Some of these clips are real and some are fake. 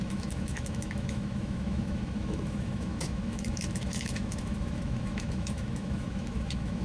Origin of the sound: fake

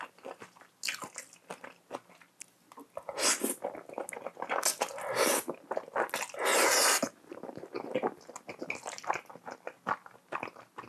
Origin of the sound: real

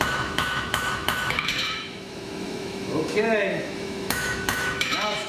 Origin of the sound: fake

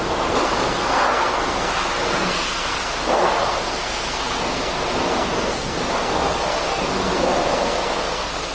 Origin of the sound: fake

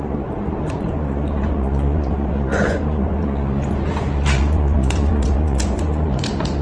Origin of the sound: fake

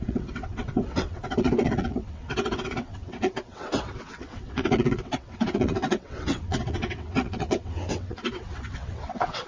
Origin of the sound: fake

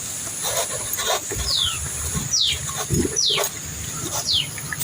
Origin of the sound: real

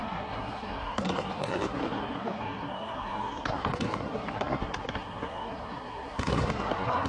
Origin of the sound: fake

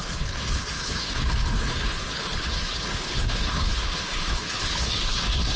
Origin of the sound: fake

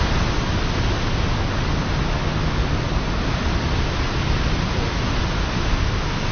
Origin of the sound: real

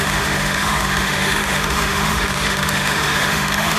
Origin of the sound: fake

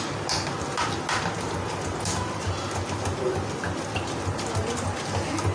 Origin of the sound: real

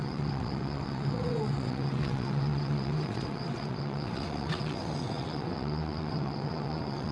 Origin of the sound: fake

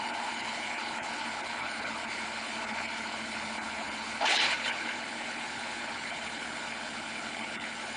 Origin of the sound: fake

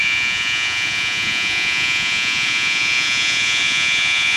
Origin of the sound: fake